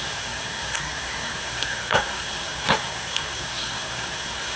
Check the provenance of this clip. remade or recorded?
remade